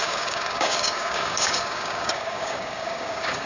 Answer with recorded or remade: remade